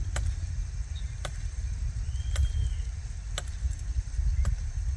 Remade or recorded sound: recorded